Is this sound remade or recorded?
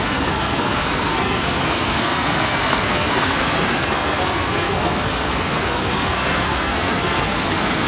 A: remade